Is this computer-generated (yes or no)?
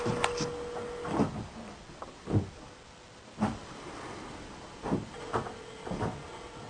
no